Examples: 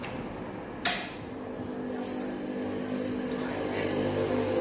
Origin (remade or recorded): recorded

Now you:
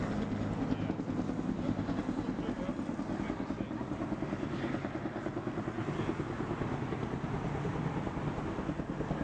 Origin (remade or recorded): recorded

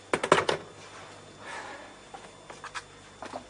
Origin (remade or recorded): recorded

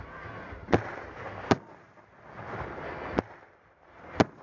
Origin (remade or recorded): recorded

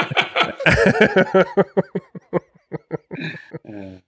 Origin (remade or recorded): recorded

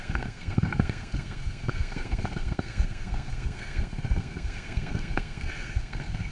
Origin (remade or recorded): remade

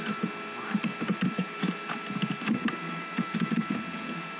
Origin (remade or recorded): recorded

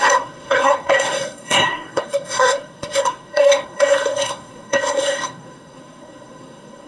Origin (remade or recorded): remade